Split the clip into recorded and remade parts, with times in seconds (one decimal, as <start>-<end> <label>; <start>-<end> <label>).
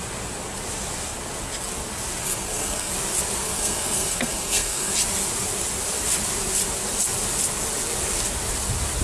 0.0-2.2 recorded; 2.2-2.9 remade; 2.9-3.4 recorded; 3.4-4.9 remade; 4.9-9.0 recorded